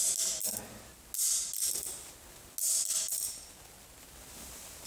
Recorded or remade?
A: recorded